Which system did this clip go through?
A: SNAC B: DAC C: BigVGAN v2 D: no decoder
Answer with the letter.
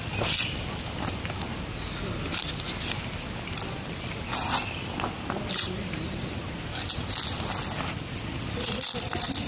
D